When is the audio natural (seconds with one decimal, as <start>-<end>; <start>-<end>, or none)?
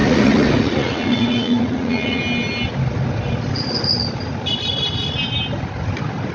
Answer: 2.2-6.3